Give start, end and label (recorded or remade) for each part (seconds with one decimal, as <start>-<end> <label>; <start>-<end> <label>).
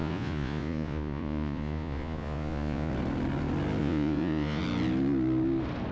0.0-2.9 remade; 2.9-3.8 recorded; 3.8-4.6 remade; 4.6-5.9 recorded